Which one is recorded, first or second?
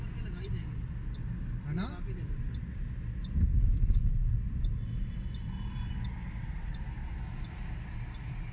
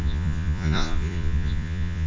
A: first